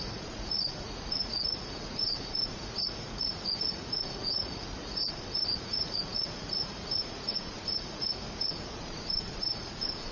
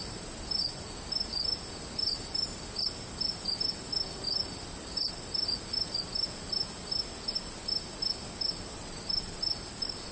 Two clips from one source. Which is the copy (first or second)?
first